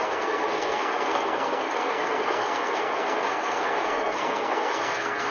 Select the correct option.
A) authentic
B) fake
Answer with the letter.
B